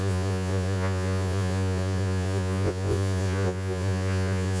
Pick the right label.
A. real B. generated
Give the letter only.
B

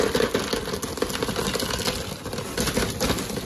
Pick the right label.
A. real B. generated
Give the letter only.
A